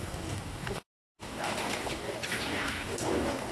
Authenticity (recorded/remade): remade